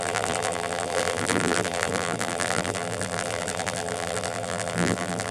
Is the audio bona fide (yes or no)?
no